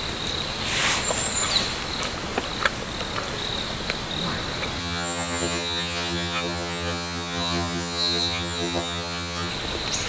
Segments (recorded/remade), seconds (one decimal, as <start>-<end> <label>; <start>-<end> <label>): 0.0-4.8 recorded; 4.8-9.5 remade; 9.5-10.1 recorded